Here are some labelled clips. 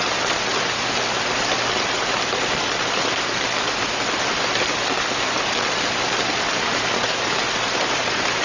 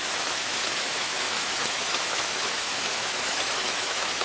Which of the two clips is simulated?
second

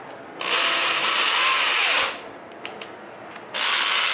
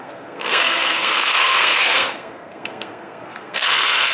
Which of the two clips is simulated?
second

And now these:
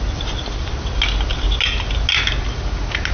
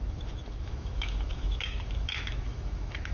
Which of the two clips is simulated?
second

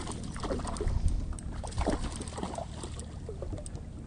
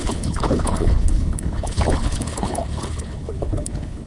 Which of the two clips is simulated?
second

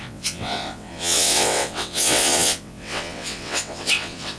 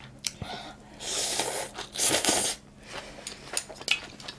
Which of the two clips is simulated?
first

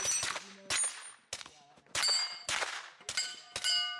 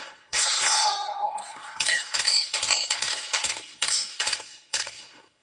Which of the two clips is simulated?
second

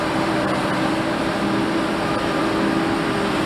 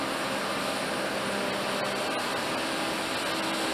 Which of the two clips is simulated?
first